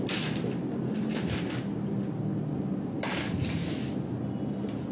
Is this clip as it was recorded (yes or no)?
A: yes